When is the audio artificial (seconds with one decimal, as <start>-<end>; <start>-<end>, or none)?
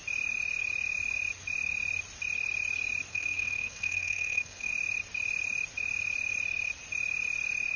3.1-4.7